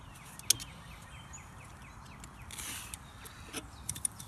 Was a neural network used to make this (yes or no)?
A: no